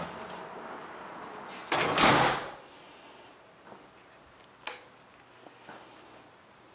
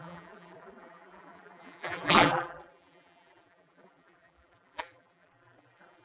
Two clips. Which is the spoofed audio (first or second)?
second